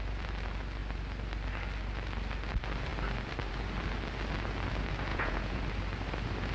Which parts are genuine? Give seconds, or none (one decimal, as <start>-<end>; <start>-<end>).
0.0-5.1; 5.6-6.5